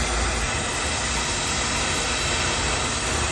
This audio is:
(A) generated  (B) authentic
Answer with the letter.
B